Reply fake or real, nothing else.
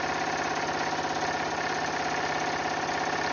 real